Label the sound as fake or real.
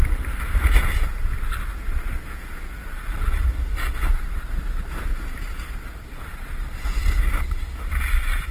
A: real